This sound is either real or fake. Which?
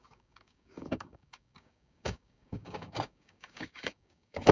fake